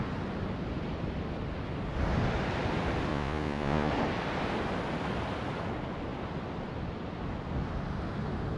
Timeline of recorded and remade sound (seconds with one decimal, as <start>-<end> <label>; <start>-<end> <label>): 0.0-3.1 recorded; 3.1-3.9 remade; 3.9-8.6 recorded